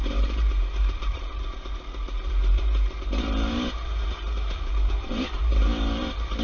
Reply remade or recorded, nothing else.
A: remade